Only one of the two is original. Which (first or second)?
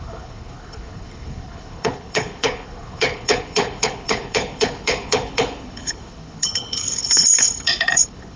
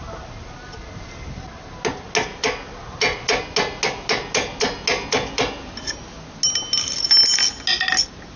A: second